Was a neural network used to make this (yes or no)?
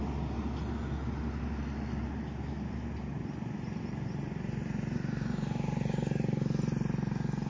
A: no